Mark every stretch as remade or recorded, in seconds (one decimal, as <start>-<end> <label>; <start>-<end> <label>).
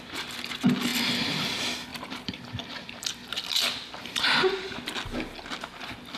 0.0-0.9 recorded; 0.9-1.5 remade; 1.5-1.9 recorded; 1.9-4.9 remade; 4.9-6.2 recorded